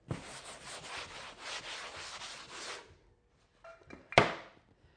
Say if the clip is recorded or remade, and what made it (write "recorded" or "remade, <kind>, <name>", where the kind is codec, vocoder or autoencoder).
recorded